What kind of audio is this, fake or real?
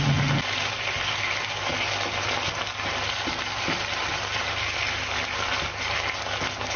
real